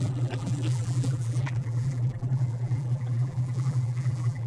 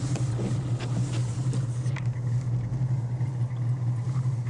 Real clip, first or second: second